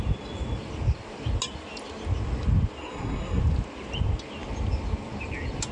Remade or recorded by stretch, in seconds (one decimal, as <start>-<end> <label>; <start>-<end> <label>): 0.0-2.8 recorded; 2.8-3.4 remade; 3.4-5.7 recorded